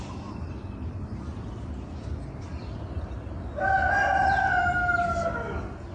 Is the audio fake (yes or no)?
no